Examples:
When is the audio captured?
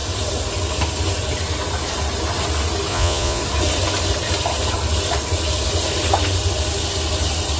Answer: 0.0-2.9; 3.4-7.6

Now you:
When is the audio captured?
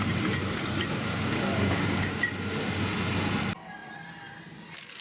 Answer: 0.0-1.1; 2.2-5.0